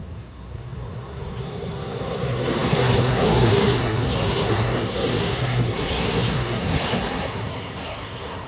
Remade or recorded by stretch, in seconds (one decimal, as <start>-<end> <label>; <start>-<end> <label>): 0.0-8.5 remade